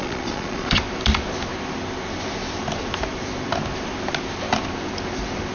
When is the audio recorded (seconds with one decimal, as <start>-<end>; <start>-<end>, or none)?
0.8-5.5